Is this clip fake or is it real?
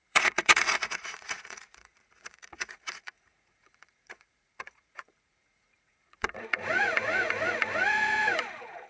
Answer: fake